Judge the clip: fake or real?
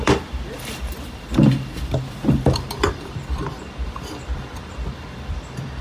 fake